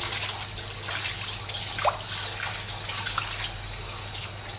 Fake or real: real